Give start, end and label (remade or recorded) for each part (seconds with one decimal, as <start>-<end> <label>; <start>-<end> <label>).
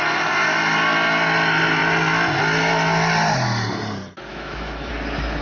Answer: 0.0-4.3 recorded; 4.3-4.9 remade; 4.9-5.4 recorded